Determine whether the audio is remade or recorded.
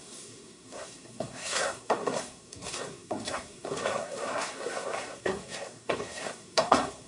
remade